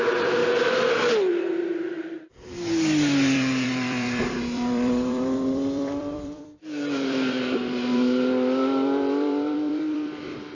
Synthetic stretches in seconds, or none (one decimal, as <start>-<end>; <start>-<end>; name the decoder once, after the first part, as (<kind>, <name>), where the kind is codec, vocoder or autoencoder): 0.0-0.4 (vocoder, BigVGAN v2); 1.3-10.5